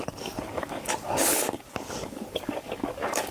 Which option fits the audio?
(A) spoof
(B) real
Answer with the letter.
A